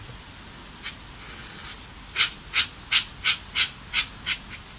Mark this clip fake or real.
real